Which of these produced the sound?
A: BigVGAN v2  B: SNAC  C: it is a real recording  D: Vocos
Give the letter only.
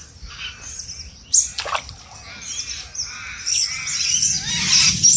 C